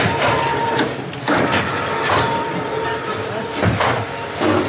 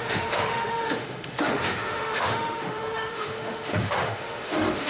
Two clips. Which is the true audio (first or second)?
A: first